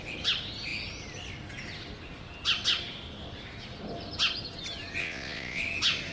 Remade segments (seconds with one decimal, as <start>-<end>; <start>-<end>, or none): 5.0-5.6